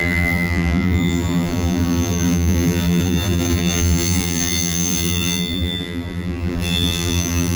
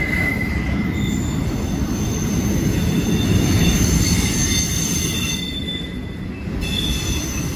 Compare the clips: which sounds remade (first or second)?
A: first